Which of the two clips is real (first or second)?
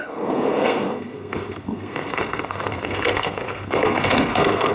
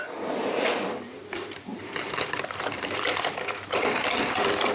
second